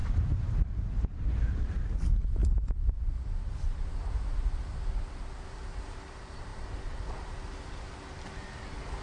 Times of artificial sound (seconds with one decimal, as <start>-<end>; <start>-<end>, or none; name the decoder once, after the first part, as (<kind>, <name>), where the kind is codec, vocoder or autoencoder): 0.0-1.9 (vocoder, BigVGAN v2); 2.4-3.0